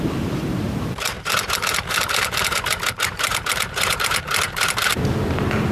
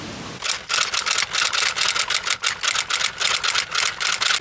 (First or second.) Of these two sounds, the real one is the second